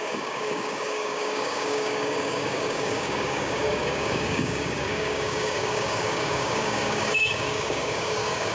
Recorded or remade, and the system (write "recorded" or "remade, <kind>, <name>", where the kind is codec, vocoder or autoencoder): remade, codec, DAC